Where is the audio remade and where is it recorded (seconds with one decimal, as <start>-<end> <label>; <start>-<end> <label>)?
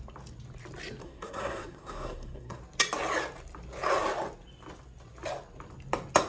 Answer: 0.0-1.0 recorded; 1.0-2.6 remade; 2.6-6.3 recorded